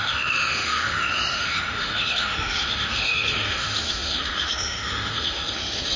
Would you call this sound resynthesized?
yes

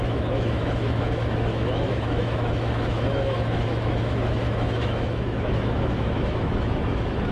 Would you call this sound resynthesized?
yes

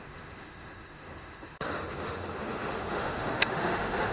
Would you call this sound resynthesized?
yes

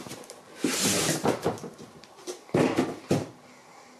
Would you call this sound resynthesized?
no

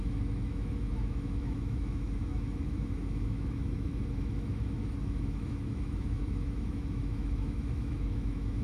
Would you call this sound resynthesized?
yes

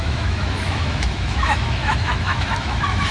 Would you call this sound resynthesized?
yes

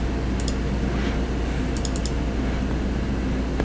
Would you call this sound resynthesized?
no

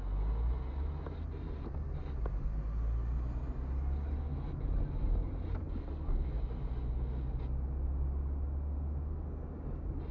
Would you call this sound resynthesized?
no